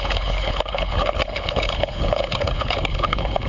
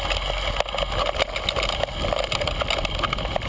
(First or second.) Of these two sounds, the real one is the second